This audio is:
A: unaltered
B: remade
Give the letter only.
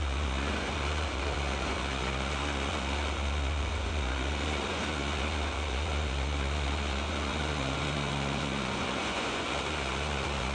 B